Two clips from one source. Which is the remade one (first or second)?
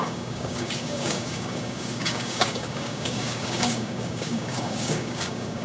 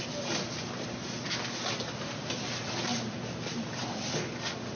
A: first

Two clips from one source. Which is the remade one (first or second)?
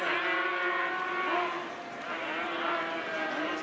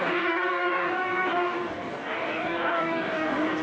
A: second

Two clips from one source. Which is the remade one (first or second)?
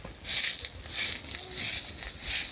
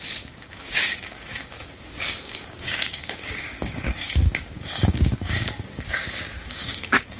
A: second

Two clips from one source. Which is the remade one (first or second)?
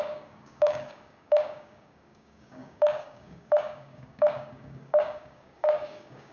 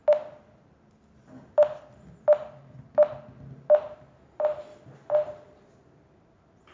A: first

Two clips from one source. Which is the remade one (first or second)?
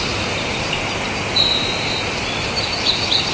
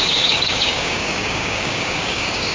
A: second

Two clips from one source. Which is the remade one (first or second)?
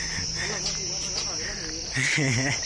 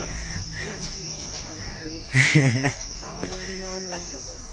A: second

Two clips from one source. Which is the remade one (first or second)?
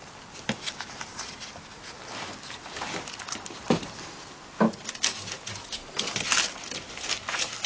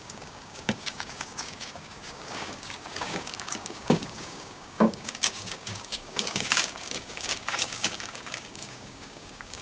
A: second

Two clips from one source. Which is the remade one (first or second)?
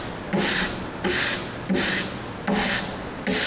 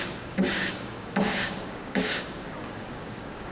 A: second